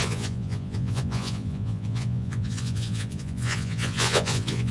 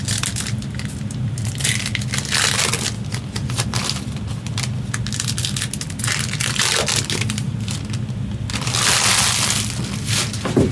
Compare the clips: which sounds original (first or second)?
second